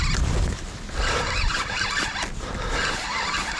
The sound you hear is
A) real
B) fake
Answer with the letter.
A